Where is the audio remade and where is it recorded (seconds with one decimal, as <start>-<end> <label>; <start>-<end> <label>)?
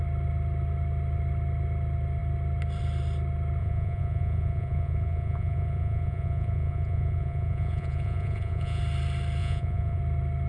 0.0-3.6 recorded; 3.6-8.8 remade; 8.8-9.4 recorded; 9.4-10.0 remade; 10.0-10.5 recorded